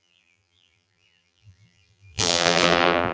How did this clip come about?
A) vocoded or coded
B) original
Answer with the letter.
A